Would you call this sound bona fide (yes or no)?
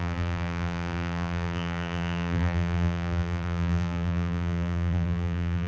no